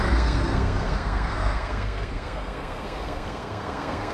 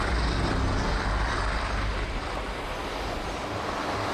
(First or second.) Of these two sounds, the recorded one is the second